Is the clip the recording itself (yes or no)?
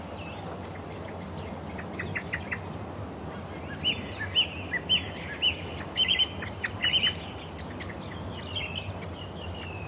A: yes